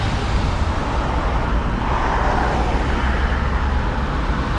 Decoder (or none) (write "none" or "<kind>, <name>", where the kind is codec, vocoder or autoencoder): none